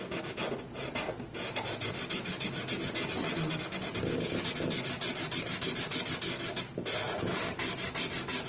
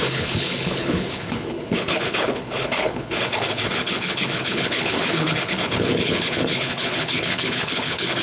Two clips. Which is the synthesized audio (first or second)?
second